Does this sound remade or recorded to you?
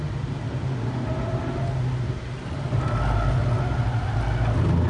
recorded